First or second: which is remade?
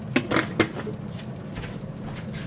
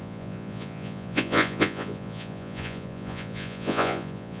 second